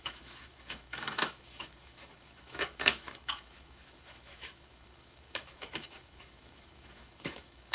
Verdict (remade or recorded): remade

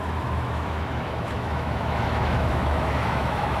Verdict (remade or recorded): remade